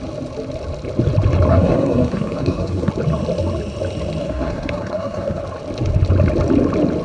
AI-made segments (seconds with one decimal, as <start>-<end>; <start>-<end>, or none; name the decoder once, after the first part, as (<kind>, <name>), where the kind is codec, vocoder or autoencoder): 1.5-2.9 (codec, SNAC); 4.2-5.4